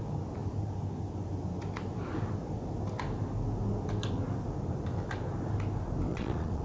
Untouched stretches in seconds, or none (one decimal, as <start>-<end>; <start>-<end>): 0.0-6.1